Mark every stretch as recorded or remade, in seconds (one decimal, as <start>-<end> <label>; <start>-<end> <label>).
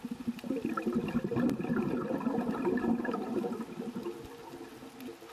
0.0-5.3 recorded